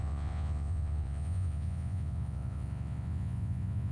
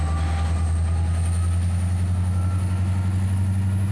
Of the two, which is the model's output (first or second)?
first